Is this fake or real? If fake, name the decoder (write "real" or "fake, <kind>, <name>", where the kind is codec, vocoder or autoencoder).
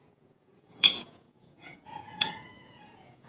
fake, vocoder, Vocos